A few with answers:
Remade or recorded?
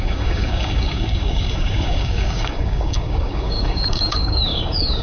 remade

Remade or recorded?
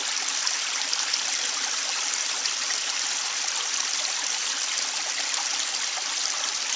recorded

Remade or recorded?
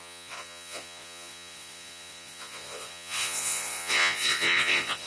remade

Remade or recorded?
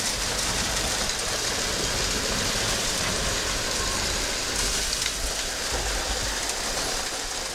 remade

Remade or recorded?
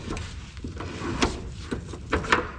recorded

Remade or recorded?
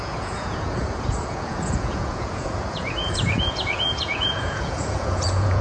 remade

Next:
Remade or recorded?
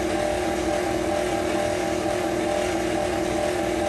recorded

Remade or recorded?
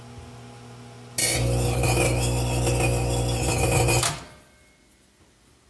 recorded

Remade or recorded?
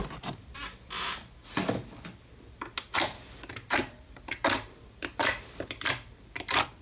remade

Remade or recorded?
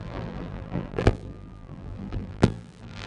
remade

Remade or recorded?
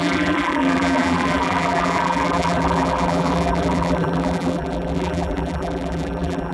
remade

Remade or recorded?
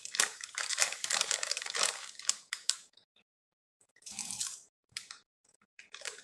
remade